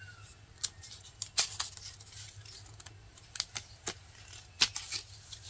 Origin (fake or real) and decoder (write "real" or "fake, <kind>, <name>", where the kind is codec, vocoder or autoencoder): real